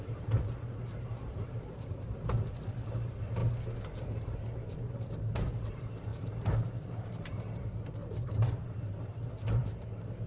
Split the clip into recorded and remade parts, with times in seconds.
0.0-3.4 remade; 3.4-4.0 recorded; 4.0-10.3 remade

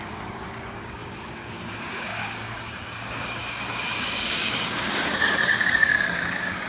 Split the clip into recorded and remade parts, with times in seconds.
0.0-6.7 remade

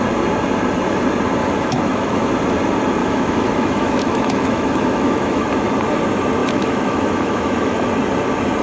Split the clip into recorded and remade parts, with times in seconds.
0.0-1.4 recorded; 1.4-2.3 remade; 2.3-3.0 recorded; 3.0-5.5 remade; 5.5-6.4 recorded; 6.4-7.9 remade; 7.9-8.6 recorded

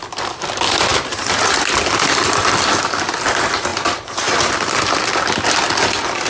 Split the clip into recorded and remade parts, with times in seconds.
0.0-0.9 recorded; 0.9-1.4 remade; 1.4-3.7 recorded; 3.7-4.5 remade; 4.5-6.3 recorded

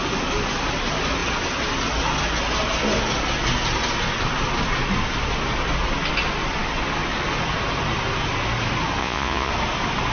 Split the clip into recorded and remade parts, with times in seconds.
0.0-9.0 recorded; 9.0-9.5 remade; 9.5-10.1 recorded

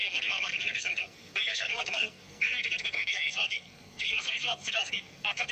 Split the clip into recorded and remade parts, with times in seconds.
0.0-5.5 remade